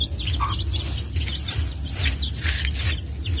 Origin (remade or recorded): recorded